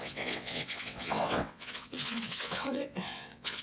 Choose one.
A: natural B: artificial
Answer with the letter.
B